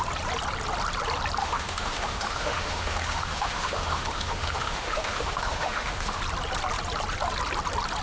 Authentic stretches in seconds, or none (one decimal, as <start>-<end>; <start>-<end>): 0.0-1.4; 6.2-8.0